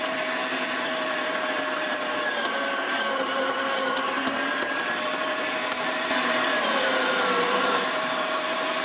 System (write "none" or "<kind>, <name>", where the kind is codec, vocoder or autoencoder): vocoder, BigVGAN v2